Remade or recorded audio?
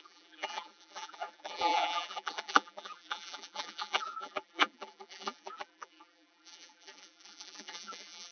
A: remade